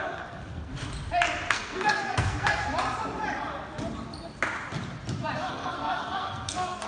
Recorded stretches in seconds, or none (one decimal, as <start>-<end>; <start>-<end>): 0.7-1.5; 2.6-5.5